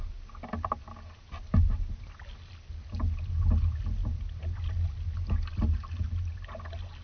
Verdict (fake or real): real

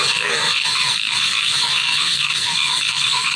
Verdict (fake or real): fake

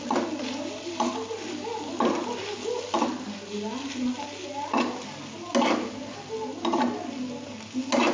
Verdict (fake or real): real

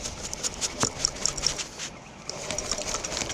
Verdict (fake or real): real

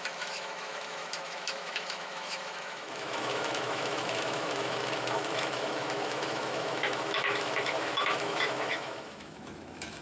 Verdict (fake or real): fake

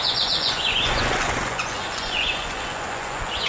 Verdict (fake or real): fake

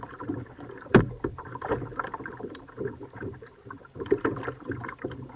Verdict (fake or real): fake